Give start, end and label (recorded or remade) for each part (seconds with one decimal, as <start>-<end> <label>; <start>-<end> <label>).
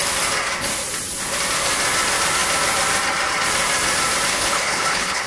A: 0.0-4.3 recorded; 4.3-5.3 remade